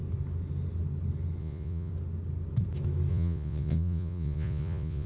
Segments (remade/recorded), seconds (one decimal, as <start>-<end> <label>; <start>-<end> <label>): 0.0-1.4 recorded; 1.4-1.9 remade; 1.9-3.1 recorded; 3.1-5.1 remade